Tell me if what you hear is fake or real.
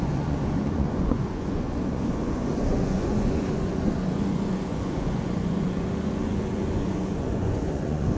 fake